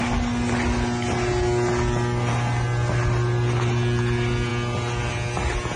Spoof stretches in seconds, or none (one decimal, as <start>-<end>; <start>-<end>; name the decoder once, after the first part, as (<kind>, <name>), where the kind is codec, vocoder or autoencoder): none